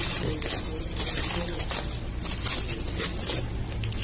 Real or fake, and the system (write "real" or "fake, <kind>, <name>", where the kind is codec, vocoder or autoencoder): real